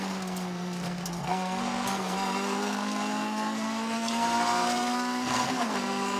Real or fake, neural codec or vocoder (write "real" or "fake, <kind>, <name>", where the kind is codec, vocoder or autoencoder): fake, codec, SNAC